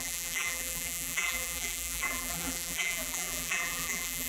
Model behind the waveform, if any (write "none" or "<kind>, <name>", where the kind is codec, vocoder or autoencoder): vocoder, BigVGAN v2